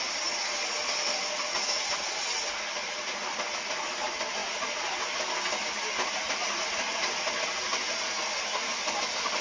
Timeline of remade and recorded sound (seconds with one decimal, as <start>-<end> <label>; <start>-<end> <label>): 0.0-9.4 recorded